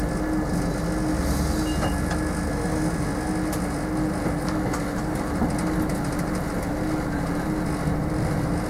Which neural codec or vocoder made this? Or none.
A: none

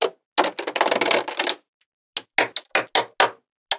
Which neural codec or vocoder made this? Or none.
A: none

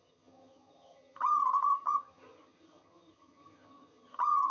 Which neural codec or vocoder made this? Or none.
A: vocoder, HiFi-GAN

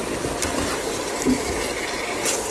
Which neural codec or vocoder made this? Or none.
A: none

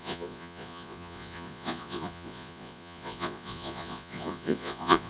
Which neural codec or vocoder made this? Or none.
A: vocoder, Vocos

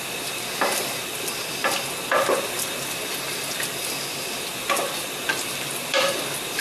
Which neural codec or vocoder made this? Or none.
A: none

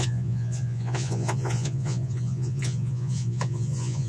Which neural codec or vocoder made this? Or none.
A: vocoder, Vocos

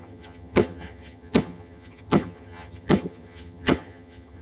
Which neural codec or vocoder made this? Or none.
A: vocoder, HiFi-GAN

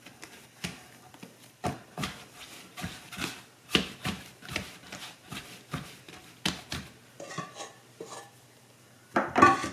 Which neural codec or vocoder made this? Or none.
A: none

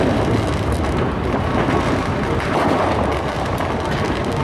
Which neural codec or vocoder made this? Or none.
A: none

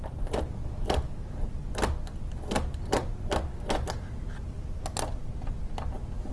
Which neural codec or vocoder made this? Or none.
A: none